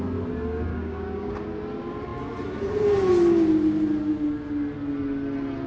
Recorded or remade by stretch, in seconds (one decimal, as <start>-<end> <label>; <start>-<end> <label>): 0.0-0.7 recorded; 0.7-1.3 remade; 1.3-5.7 recorded